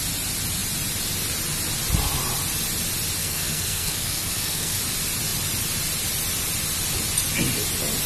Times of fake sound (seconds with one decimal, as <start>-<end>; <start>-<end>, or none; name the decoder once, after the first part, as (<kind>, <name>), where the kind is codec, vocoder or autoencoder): 3.2-4.8 (codec, SNAC)

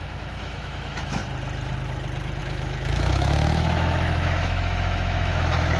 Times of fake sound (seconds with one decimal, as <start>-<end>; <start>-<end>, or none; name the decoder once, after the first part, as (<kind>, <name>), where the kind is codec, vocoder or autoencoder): 0.0-1.2 (autoencoder, DAC-VAE); 2.4-5.8

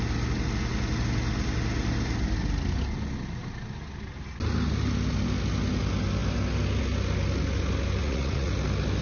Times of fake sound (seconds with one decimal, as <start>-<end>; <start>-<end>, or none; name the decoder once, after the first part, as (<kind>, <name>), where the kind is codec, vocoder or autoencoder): 8.0-8.5 (vocoder, Vocos)